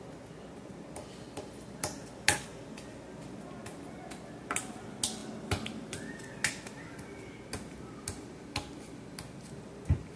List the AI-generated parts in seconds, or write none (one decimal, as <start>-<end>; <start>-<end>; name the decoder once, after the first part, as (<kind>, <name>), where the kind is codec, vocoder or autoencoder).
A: none